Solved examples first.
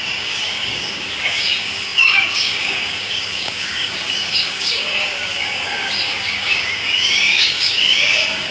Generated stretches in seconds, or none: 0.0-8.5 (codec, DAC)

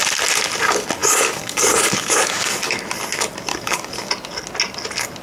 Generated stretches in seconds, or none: 1.0-2.8 (codec, DAC); 3.5-4.1

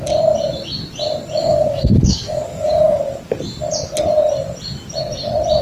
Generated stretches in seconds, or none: 1.4-3.0 (codec, DAC)

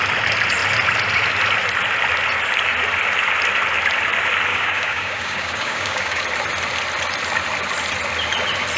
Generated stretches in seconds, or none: 4.5-6.2 (codec, DAC)

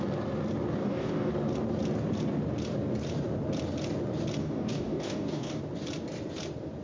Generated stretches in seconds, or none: 0.8-1.3 (codec, DAC); 4.4-5.6

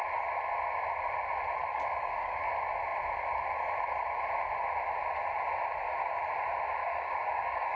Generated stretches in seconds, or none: 1.7-2.5 (codec, DAC); 6.8-7.8